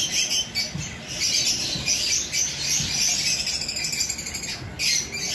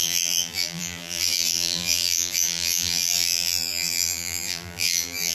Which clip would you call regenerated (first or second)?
second